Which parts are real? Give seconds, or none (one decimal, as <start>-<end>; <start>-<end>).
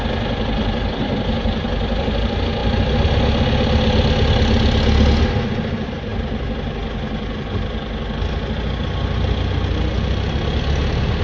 0.0-11.2